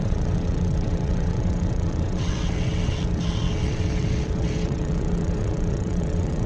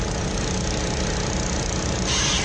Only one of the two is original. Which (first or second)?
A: second